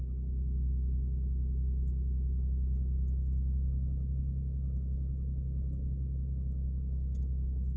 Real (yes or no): yes